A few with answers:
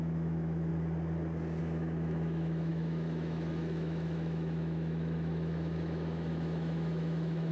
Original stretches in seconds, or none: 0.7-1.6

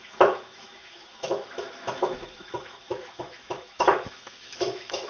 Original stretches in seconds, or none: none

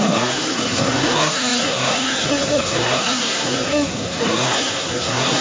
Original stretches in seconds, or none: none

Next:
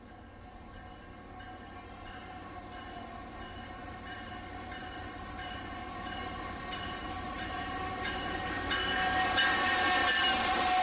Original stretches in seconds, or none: 0.0-3.8; 4.3-4.8; 8.6-10.0